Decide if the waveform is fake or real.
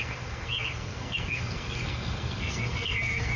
fake